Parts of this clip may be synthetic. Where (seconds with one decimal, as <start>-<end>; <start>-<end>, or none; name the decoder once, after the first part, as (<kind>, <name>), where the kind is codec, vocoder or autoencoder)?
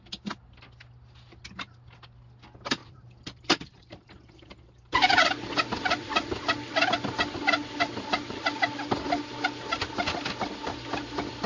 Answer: 2.8-6.1 (vocoder, BigVGAN v2)